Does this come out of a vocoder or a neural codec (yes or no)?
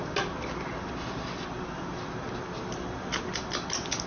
no